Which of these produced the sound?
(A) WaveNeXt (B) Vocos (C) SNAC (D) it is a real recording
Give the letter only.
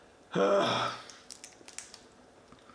D